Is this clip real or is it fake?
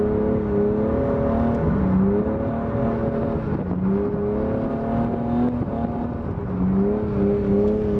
real